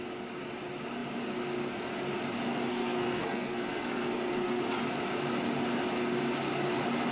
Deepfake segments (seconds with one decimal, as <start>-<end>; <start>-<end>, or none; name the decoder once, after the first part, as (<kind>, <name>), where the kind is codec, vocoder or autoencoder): 2.7-4.6 (codec, SNAC)